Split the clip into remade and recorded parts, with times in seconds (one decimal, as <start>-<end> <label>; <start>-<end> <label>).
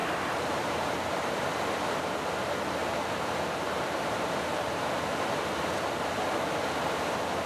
0.0-1.5 remade; 1.5-2.8 recorded; 2.8-5.5 remade; 5.5-7.5 recorded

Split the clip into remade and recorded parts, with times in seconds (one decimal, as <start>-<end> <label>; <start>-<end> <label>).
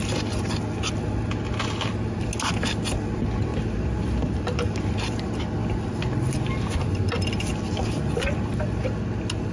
0.0-3.5 recorded; 3.5-5.3 remade; 5.3-9.5 recorded